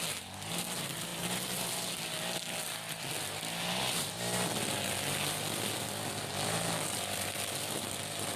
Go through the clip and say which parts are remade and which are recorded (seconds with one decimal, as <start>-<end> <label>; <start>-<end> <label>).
0.0-8.4 recorded